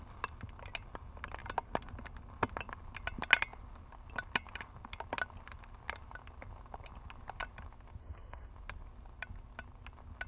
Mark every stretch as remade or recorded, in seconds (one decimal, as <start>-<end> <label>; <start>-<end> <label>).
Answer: 0.0-8.0 recorded; 8.0-8.5 remade; 8.5-10.3 recorded